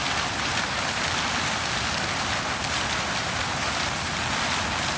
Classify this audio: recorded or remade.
recorded